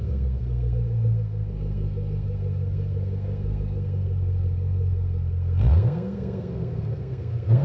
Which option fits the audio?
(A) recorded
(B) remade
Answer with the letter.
B